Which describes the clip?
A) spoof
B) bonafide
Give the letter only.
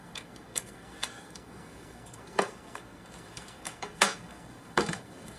A